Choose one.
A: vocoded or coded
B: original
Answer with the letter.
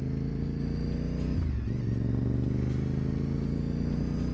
B